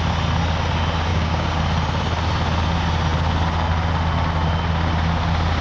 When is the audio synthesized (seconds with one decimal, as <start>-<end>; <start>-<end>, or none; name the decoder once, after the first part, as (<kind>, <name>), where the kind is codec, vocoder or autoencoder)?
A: 1.1-1.6 (codec, DAC)